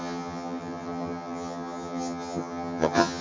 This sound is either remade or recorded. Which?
remade